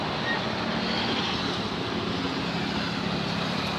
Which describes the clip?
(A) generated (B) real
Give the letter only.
B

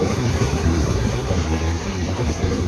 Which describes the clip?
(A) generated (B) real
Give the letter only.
A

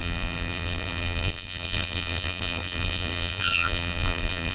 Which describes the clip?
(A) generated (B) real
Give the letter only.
A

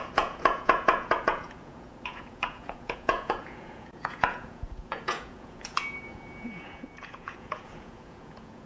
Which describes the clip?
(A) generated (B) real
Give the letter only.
A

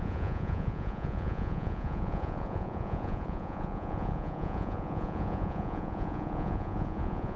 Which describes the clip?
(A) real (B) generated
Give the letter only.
B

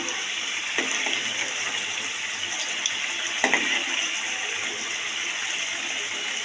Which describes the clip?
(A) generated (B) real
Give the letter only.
B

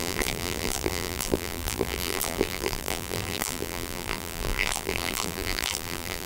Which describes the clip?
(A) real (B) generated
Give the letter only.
B